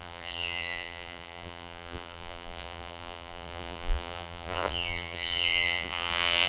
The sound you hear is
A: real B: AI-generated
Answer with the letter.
B